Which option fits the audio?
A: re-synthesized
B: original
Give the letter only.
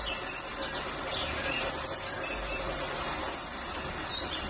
B